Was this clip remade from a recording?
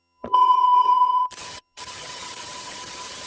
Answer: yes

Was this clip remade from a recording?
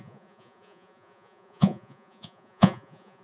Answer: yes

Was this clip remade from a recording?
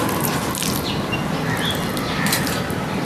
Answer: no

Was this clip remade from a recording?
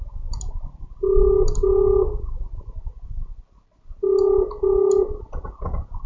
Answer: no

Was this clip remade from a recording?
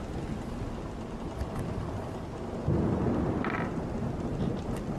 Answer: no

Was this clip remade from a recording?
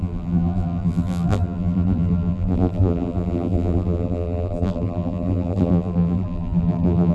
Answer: yes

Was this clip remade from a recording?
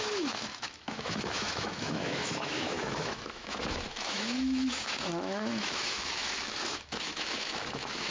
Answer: yes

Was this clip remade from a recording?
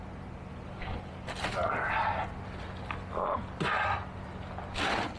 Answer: no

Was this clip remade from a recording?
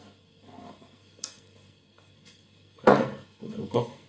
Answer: yes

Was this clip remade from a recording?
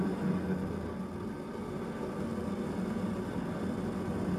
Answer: no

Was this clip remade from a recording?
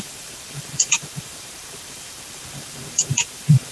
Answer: yes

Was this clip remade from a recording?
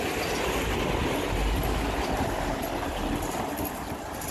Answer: no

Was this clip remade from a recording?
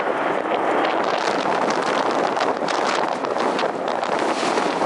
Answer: no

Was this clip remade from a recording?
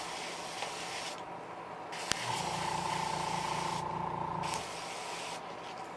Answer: no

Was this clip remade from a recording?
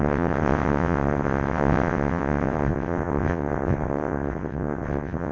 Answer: yes